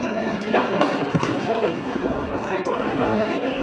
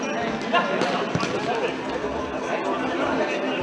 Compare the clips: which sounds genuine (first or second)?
second